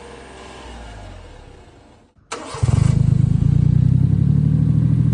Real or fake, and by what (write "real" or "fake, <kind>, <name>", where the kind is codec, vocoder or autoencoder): real